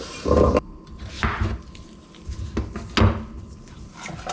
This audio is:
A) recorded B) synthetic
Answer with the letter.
A